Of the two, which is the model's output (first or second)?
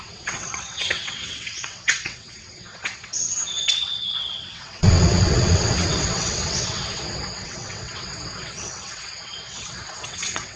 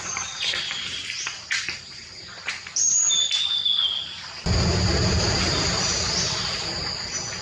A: first